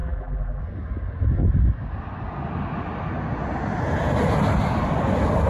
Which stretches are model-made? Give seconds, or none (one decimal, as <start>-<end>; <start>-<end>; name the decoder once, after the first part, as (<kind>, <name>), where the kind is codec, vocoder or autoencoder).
0.0-0.6 (vocoder, BigVGAN v2)